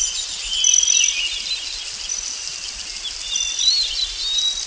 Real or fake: real